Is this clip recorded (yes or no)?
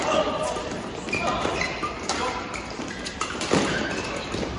yes